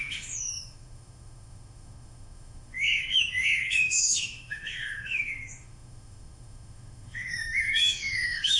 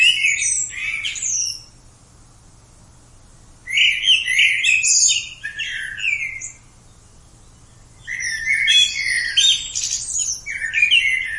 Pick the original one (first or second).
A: second